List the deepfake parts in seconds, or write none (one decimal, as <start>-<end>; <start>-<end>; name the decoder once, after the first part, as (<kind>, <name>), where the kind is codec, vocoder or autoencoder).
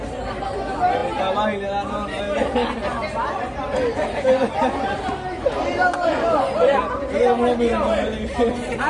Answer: none